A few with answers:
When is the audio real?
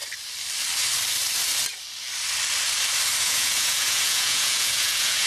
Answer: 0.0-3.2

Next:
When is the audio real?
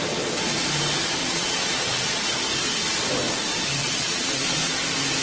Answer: 0.0-1.2; 2.3-3.8; 4.7-5.2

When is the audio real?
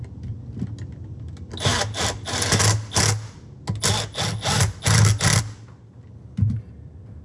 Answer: 0.0-7.2